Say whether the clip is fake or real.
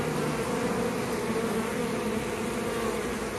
real